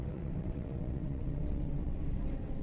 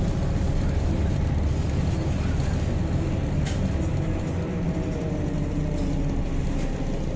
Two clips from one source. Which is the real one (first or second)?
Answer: second